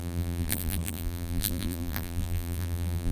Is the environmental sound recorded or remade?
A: remade